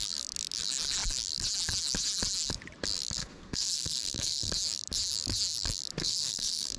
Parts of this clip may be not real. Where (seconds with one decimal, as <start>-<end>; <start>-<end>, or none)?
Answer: 3.2-4.5; 6.0-6.8